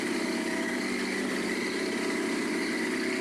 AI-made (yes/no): yes